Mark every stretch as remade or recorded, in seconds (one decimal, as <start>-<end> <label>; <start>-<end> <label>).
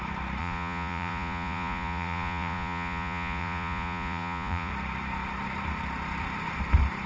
0.0-0.4 recorded; 0.4-4.7 remade; 4.7-7.1 recorded